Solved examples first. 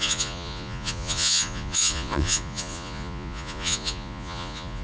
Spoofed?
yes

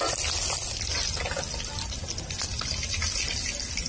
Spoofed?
no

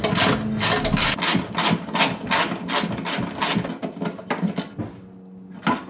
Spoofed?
no